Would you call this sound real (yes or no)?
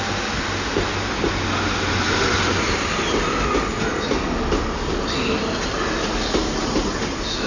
yes